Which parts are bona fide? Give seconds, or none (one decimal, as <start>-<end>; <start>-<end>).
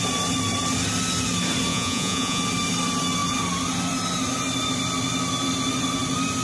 0.0-1.7; 2.4-6.4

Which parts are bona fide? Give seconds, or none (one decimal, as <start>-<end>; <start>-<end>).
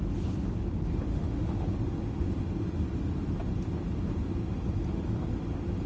0.0-1.1; 1.7-5.9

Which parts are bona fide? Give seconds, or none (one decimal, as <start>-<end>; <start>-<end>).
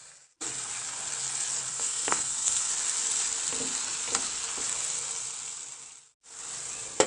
0.0-1.7; 2.7-7.1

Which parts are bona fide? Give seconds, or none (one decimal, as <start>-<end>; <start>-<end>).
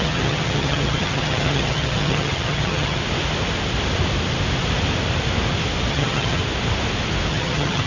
3.0-5.9; 6.4-7.3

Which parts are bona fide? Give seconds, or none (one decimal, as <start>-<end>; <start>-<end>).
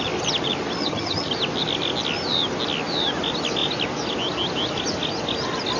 0.0-0.8; 1.3-5.8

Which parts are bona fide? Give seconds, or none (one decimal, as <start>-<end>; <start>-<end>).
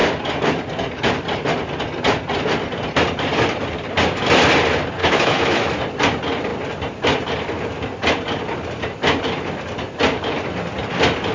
0.0-5.0; 5.7-11.3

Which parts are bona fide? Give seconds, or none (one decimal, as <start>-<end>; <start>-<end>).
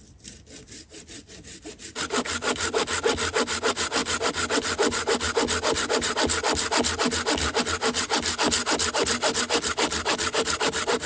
0.0-11.1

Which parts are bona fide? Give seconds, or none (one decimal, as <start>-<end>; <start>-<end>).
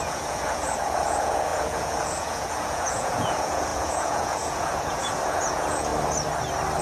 5.9-6.8